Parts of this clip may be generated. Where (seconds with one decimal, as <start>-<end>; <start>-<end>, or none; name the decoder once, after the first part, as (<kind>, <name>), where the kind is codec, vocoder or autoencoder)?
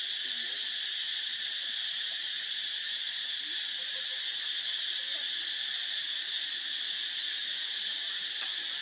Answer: 1.0-4.6 (vocoder, BigVGAN v2); 5.8-6.5; 7.4-8.8